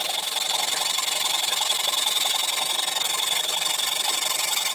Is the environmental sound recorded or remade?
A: recorded